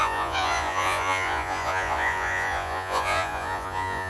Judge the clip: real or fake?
fake